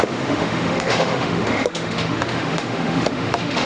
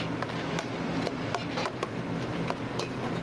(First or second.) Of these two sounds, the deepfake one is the first